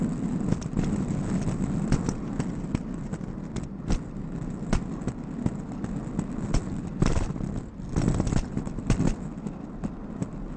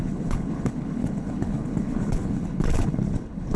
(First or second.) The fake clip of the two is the second